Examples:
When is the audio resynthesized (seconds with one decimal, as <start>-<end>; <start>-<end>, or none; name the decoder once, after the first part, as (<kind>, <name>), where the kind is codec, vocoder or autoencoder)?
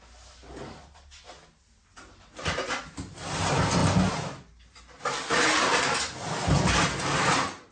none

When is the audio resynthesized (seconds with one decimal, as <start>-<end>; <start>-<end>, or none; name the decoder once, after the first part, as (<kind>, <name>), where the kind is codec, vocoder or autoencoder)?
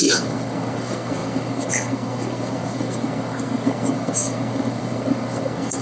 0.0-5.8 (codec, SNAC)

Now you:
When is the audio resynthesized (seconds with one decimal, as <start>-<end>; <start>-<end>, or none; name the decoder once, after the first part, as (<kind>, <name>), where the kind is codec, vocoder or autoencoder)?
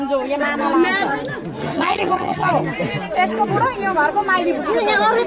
1.6-2.5 (vocoder, HiFi-GAN)